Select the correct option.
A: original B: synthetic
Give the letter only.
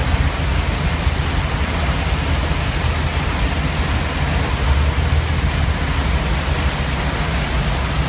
A